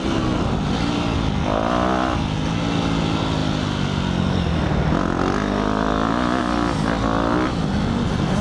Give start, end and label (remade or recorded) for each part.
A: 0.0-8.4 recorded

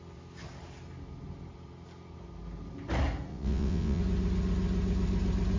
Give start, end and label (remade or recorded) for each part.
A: 0.0-3.3 recorded; 3.3-4.0 remade; 4.0-5.6 recorded